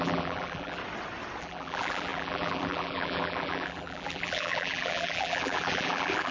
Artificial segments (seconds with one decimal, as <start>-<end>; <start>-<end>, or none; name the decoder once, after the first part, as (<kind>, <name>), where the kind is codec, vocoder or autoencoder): 0.0-0.8 (vocoder, BigVGAN v2); 1.4-6.3